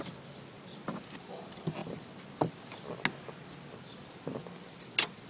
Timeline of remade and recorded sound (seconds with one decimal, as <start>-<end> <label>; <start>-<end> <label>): 0.0-5.3 recorded